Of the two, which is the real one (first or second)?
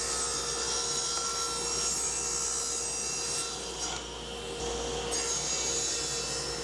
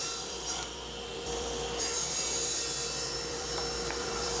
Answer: first